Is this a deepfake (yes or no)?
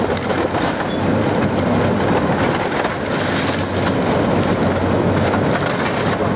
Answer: no